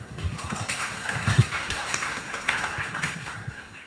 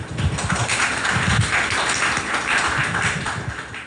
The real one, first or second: second